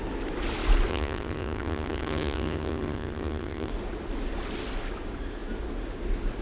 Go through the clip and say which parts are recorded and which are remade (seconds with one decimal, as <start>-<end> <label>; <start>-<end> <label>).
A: 0.0-0.9 recorded; 0.9-3.7 remade; 3.7-6.4 recorded